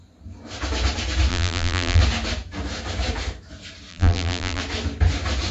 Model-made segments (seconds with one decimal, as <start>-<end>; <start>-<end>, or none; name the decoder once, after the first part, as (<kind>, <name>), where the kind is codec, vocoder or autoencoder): 1.3-2.0 (vocoder, BigVGAN v2); 3.9-4.6